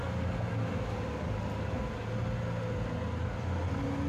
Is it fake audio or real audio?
real